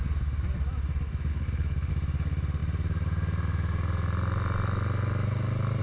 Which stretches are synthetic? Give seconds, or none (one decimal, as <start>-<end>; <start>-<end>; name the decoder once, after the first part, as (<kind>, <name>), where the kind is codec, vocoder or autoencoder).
1.3-1.9 (codec, HILCodec)